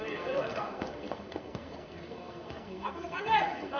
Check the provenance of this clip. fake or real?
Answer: fake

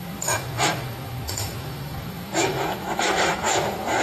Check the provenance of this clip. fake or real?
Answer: fake